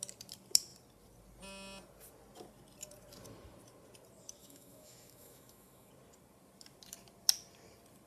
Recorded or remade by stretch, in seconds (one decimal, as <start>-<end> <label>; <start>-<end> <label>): 0.0-4.4 recorded; 4.4-5.9 remade; 5.9-8.1 recorded

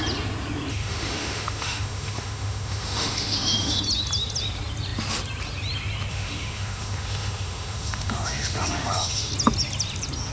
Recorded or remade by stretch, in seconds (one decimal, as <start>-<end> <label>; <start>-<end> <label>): 0.0-0.7 recorded; 0.7-3.8 remade; 3.8-6.1 recorded; 6.1-9.3 remade; 9.3-10.3 recorded